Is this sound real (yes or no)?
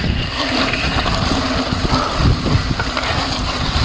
yes